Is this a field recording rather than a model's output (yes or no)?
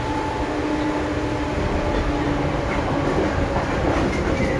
yes